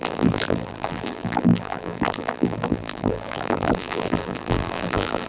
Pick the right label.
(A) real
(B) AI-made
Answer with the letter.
B